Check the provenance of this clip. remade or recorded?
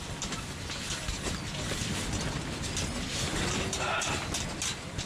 recorded